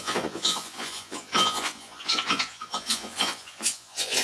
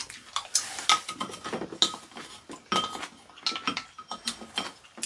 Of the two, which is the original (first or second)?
second